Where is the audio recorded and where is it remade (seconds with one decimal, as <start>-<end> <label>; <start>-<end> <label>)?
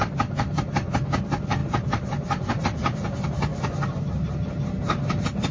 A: 0.0-3.5 remade; 3.5-4.5 recorded; 4.5-5.5 remade